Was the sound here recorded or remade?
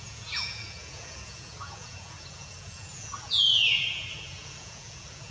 remade